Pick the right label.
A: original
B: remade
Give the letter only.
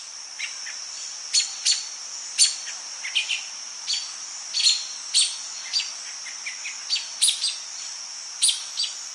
A